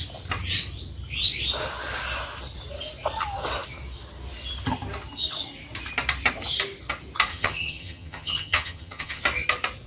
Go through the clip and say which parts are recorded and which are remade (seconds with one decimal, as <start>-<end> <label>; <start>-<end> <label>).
0.0-7.3 recorded; 7.3-9.2 remade; 9.2-9.9 recorded